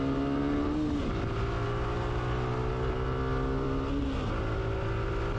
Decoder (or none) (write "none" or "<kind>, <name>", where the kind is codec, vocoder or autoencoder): none